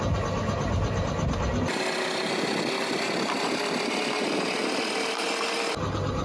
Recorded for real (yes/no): yes